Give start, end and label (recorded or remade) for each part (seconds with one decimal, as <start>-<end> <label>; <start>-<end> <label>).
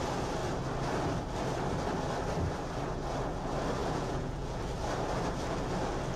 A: 0.0-3.8 recorded; 3.8-4.6 remade; 4.6-6.2 recorded